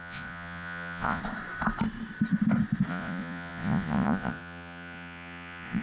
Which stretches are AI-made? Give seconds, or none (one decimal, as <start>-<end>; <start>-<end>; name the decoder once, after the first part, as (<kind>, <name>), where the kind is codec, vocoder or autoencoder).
0.0-1.2 (vocoder, Vocos); 2.9-5.8